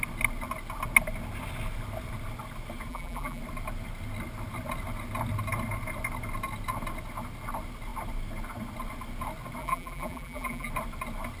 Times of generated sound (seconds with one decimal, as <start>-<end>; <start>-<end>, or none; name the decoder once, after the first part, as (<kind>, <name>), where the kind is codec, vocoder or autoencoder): 2.9-3.4 (vocoder, BigVGAN v2); 9.6-10.7